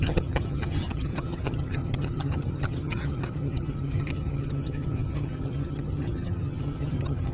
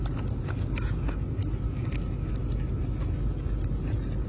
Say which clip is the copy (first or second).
first